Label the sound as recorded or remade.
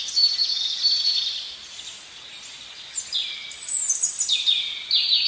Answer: recorded